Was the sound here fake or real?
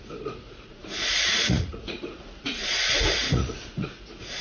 fake